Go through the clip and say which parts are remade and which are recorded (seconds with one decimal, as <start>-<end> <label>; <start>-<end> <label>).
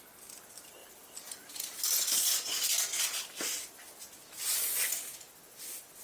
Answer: 0.0-6.0 recorded